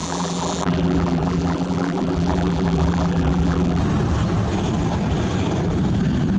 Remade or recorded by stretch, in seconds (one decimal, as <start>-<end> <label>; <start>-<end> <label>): 0.0-3.8 remade; 3.8-6.4 recorded